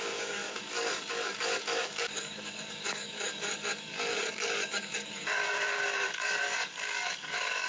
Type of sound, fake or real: fake